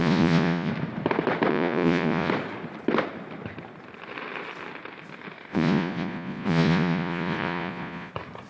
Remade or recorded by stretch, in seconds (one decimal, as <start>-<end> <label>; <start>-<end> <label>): 0.0-0.7 remade; 0.7-1.5 recorded; 1.5-2.3 remade; 2.3-5.5 recorded; 5.5-8.1 remade; 8.1-8.5 recorded